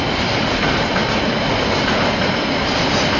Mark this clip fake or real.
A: real